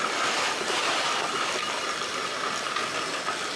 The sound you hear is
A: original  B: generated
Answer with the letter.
A